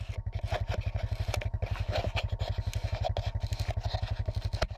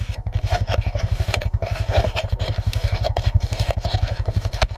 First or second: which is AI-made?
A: second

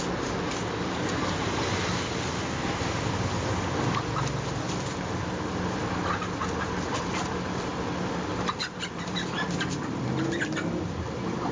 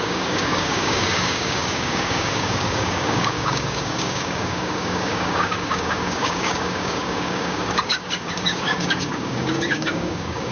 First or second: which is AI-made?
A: second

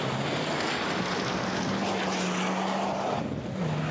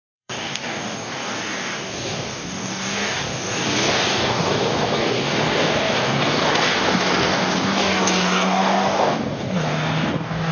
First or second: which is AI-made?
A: second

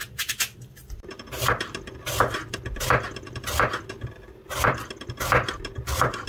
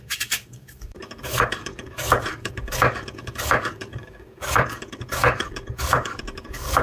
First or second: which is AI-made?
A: second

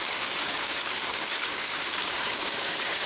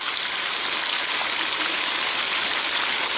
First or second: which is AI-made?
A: first